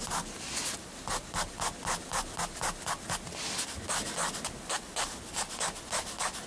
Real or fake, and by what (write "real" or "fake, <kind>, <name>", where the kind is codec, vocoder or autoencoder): real